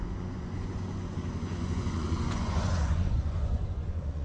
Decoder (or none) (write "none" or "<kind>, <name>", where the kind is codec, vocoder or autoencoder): vocoder, Vocos